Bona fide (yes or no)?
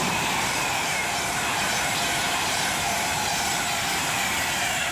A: no